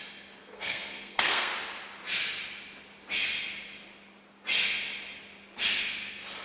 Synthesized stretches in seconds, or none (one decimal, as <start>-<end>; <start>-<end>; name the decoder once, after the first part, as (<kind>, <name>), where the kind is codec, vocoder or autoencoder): 0.4-1.5 (codec, SNAC)